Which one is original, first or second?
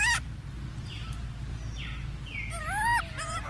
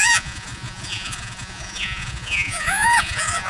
first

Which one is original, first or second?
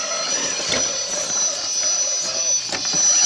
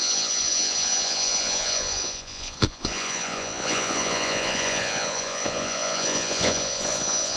first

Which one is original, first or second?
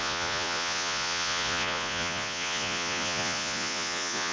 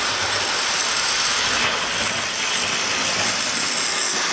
second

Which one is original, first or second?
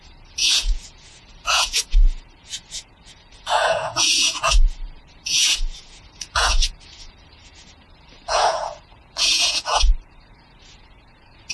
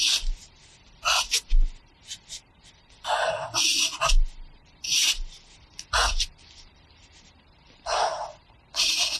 second